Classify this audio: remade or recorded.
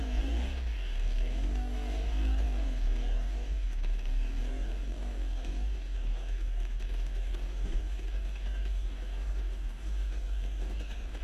remade